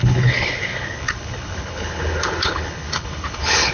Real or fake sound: fake